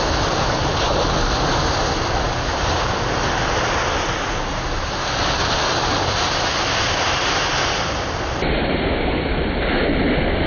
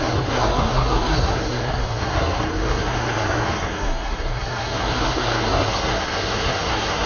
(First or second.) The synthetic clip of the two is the second